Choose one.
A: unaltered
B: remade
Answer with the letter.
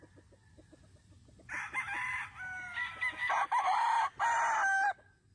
A